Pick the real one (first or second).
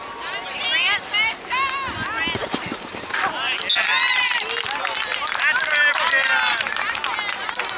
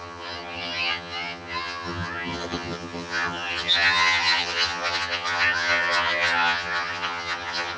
first